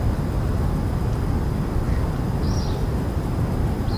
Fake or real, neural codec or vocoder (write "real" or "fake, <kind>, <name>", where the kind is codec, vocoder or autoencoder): real